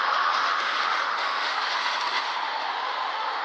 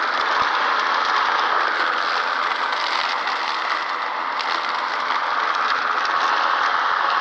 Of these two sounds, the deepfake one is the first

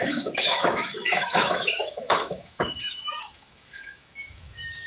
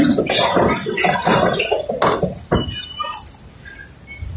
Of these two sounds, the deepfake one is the first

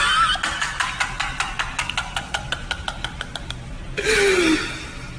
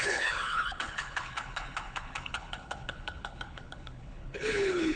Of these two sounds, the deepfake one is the second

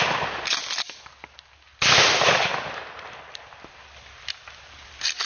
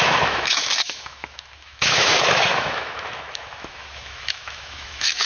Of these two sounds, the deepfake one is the second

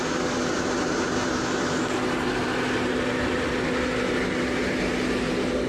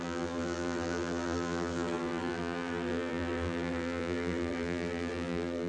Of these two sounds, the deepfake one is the second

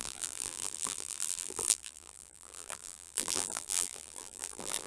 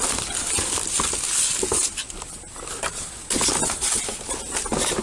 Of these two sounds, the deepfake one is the first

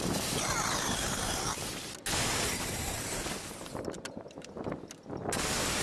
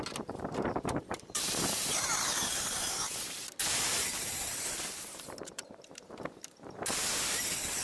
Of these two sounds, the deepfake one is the second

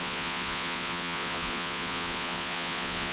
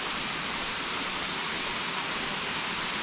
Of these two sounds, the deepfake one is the first